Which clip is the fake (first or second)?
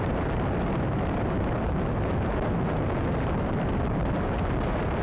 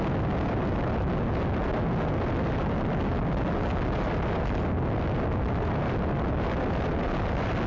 first